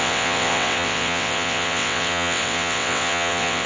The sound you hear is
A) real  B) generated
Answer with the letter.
B